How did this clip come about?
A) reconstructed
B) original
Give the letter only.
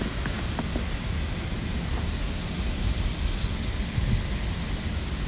B